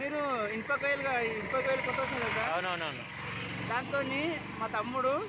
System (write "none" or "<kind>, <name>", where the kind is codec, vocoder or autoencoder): none